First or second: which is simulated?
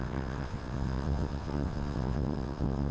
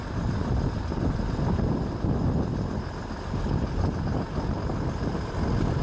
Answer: first